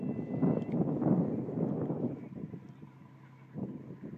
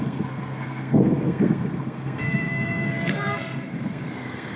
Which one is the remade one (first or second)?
second